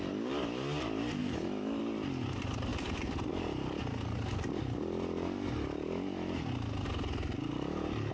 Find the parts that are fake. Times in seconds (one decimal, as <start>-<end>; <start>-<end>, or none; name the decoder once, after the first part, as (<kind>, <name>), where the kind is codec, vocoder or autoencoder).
1.2-1.8 (autoencoder, DAC-VAE)